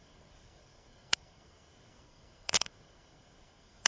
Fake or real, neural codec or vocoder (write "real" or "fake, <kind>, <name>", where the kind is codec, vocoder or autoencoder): fake, codec, SNAC